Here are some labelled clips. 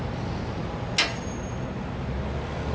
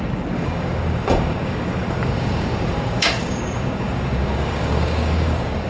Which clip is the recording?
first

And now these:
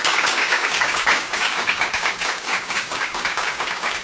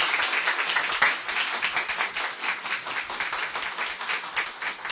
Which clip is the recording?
second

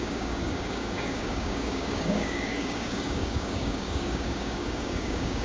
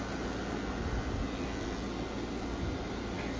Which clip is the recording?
second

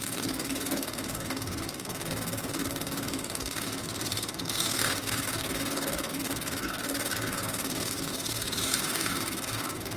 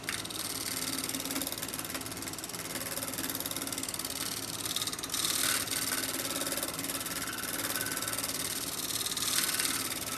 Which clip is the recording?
second